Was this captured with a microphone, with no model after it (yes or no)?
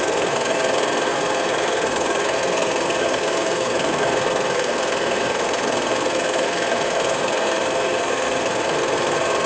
no